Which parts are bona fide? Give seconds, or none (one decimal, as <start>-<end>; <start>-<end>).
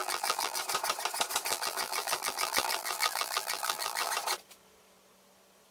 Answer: 0.6-1.5; 4.1-5.7